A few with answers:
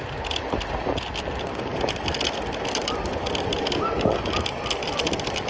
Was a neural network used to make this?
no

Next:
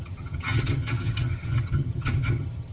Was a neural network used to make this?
yes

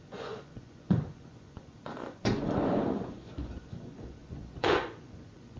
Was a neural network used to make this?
yes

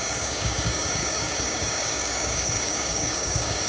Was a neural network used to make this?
yes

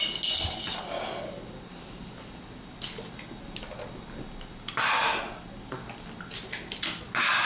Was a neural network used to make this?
no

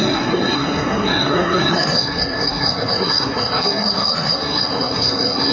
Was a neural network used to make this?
yes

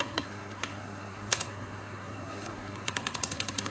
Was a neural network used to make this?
yes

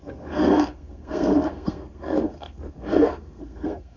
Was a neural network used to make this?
yes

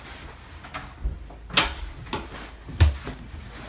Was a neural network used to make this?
no